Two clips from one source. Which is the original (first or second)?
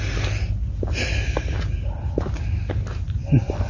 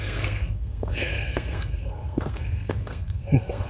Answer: first